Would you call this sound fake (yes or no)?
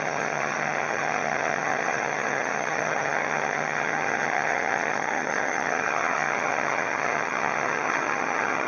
yes